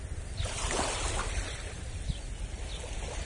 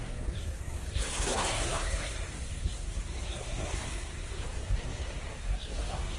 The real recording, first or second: first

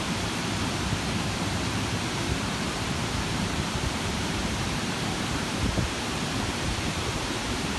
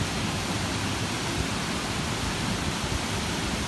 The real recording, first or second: second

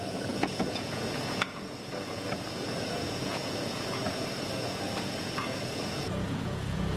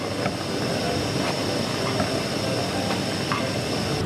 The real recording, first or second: second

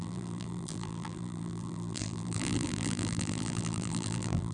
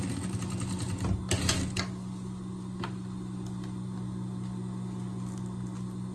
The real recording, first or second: second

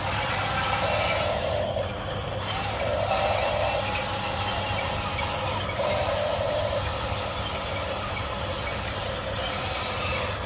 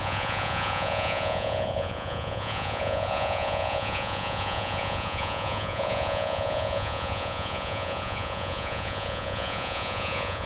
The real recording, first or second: first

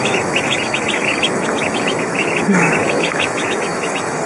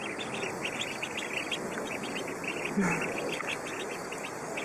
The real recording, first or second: second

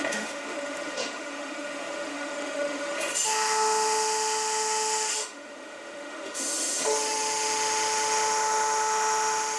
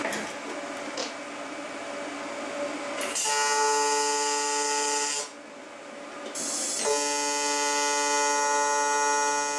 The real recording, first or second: second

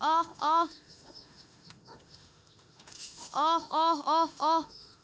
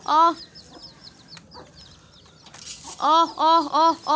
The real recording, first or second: second